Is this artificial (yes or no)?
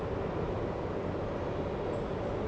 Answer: no